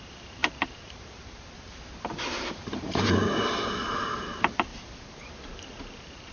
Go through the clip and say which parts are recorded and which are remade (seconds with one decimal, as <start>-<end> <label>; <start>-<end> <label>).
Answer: 0.0-3.2 remade; 3.2-3.8 recorded; 3.8-6.3 remade

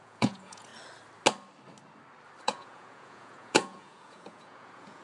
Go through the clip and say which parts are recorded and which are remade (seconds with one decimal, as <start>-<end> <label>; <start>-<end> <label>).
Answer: 0.0-0.7 remade; 0.7-2.4 recorded; 2.4-5.0 remade